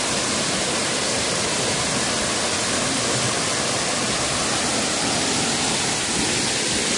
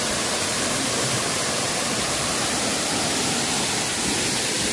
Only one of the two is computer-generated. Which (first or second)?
second